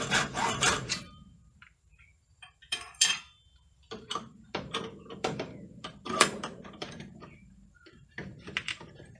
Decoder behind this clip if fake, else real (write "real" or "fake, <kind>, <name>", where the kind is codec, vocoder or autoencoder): fake, vocoder, BigVGAN v2